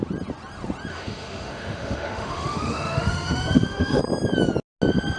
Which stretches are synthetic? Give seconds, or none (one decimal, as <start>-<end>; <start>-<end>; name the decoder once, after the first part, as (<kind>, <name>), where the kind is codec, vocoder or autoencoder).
0.9-4.0 (autoencoder, DAC-VAE)